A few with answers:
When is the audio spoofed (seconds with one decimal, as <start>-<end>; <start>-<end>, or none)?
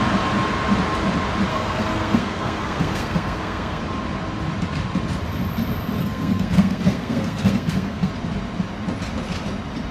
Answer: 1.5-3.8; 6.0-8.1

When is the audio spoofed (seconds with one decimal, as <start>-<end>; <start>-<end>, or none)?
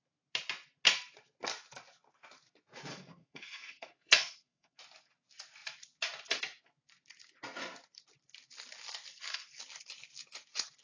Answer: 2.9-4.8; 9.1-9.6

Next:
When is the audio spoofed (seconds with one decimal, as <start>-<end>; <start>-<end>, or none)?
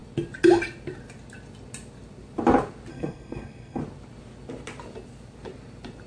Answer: 2.9-3.8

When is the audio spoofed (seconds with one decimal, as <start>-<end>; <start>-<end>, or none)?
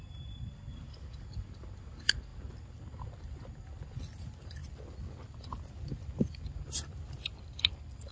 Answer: none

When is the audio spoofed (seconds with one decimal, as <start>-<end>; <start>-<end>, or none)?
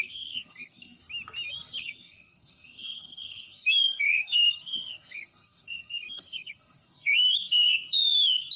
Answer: 0.0-1.0; 1.8-8.6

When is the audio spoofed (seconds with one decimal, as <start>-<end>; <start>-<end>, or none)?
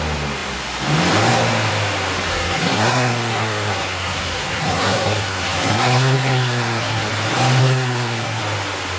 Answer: 2.3-7.1; 7.6-8.4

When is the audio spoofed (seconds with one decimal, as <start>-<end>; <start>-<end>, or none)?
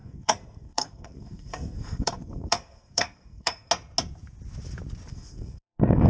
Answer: 0.0-3.7; 5.1-6.1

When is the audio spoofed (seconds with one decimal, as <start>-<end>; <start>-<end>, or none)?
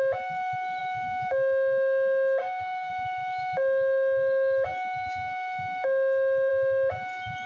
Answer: 2.4-2.9